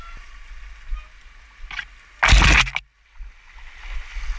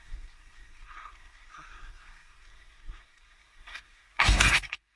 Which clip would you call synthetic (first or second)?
second